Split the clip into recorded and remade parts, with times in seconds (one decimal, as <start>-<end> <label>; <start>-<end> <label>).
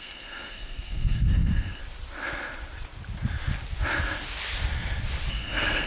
0.0-1.8 remade; 1.8-5.3 recorded; 5.3-5.9 remade